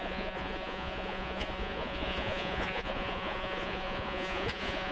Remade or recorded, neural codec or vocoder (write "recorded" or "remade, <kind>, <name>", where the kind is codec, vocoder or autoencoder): remade, vocoder, Vocos